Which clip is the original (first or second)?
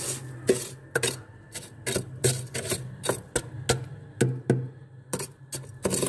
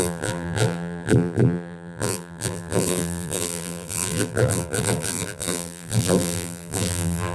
first